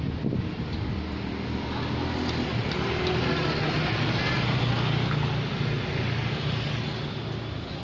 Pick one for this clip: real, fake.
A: real